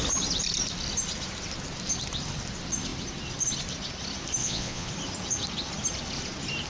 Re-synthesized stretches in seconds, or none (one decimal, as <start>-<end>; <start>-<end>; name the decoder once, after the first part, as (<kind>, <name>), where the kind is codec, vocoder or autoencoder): 4.4-4.9 (vocoder, Vocos)